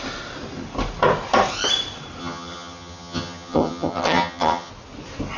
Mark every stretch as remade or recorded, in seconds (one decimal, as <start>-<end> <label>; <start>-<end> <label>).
0.0-2.2 recorded; 2.2-4.7 remade; 4.7-5.4 recorded